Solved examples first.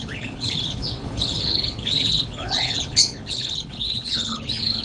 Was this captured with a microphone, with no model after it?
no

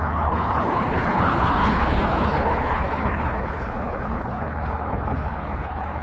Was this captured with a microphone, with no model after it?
no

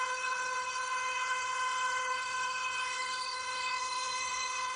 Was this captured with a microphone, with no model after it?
no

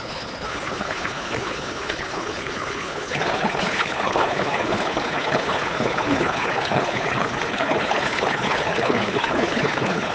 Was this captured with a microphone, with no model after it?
no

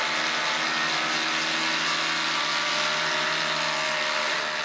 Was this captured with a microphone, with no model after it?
yes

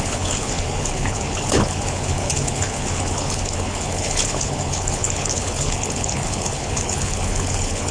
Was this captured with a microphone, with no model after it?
no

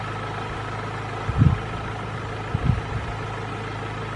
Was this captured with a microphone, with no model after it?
yes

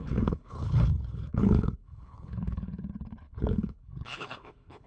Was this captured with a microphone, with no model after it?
no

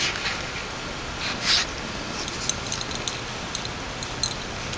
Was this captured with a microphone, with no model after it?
yes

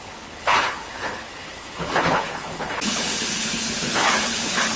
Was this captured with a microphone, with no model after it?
no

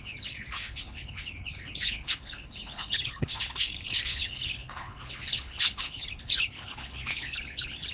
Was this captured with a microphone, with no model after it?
no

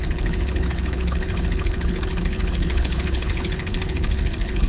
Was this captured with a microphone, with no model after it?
no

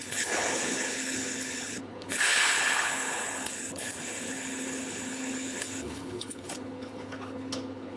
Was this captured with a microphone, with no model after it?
no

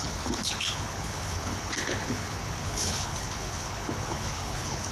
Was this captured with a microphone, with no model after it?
no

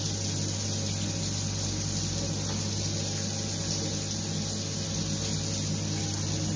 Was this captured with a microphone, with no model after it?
yes